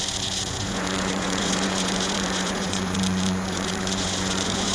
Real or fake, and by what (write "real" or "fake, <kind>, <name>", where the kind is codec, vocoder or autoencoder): fake, vocoder, Vocos